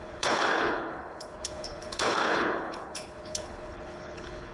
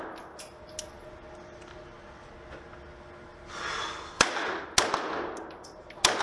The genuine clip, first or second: second